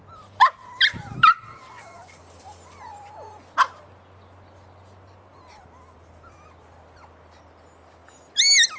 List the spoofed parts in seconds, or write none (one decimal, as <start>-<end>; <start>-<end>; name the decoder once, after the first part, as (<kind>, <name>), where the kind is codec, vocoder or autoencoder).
none